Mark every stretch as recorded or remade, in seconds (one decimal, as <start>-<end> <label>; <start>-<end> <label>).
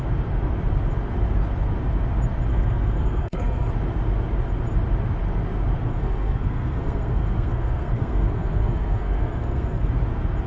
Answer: 0.0-2.5 recorded; 2.5-3.7 remade; 3.7-5.9 recorded; 5.9-9.9 remade; 9.9-10.5 recorded